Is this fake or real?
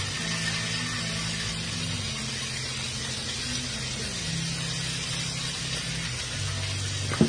real